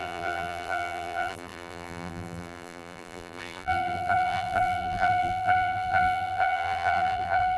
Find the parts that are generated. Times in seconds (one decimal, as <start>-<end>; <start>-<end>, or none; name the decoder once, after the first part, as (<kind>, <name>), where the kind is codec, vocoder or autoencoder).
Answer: 0.0-7.6 (vocoder, BigVGAN v2)